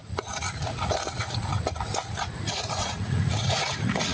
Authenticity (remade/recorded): remade